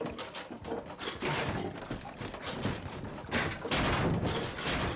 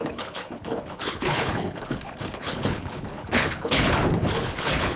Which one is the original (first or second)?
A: first